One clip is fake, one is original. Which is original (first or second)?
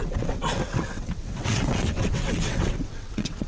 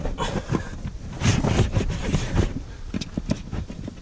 second